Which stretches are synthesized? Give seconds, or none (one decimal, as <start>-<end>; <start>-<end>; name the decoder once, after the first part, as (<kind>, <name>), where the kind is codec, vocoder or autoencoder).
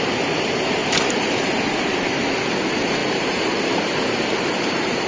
0.8-1.8 (vocoder, BigVGAN v2); 3.0-5.1